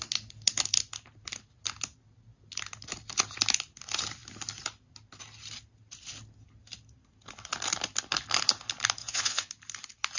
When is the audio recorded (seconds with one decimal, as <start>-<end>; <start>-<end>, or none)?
0.0-9.0; 9.5-10.2